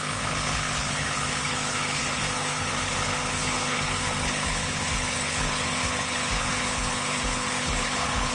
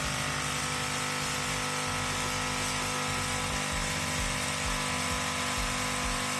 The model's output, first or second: first